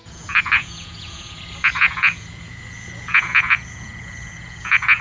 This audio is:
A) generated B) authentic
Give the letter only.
A